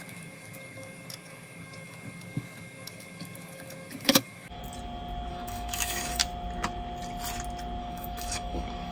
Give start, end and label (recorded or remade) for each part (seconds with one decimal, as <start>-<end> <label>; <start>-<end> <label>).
0.0-4.6 remade; 4.6-5.3 recorded; 5.3-6.2 remade; 6.2-7.8 recorded; 7.8-8.9 remade